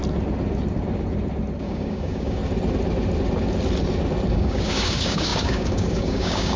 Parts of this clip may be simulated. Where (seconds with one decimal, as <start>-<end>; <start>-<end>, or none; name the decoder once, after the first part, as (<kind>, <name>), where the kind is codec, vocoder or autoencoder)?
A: 1.6-2.4 (codec, DAC); 4.3-6.6